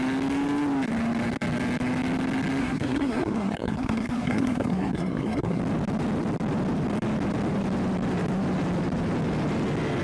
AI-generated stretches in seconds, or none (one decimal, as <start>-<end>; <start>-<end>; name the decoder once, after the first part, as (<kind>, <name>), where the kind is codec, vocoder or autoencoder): 2.6-5.6 (codec, SNAC)

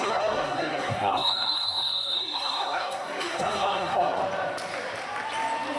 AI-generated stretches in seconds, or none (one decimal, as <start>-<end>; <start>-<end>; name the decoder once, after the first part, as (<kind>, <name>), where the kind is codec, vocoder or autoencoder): 0.0-4.2 (codec, SNAC)

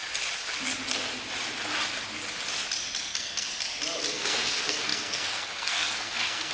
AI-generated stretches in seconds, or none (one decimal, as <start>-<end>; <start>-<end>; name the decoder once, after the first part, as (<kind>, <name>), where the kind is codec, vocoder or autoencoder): 3.0-3.5 (codec, SNAC); 4.1-6.5

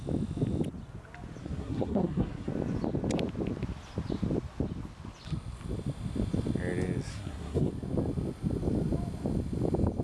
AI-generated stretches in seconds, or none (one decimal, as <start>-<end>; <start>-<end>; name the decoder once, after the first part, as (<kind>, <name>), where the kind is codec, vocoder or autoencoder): 1.4-2.5 (codec, SNAC); 7.1-7.7